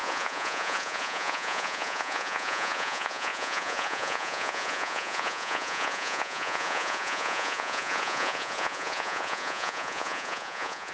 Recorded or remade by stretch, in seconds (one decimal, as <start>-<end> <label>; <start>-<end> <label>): 0.0-10.9 remade